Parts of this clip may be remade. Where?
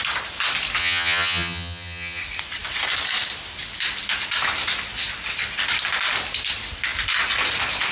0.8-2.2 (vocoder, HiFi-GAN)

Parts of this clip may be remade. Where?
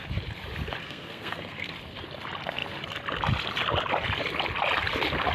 0.8-1.7 (codec, SNAC)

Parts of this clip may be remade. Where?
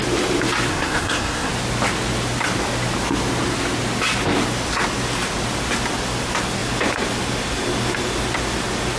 0.7-1.5 (codec, SNAC)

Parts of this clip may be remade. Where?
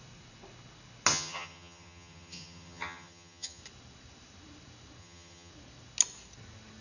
1.1-3.6 (vocoder, HiFi-GAN); 5.0-5.5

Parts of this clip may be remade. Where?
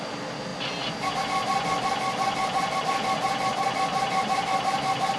none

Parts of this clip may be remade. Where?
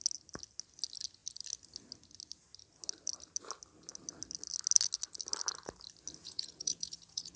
6.2-7.4 (vocoder, Vocos)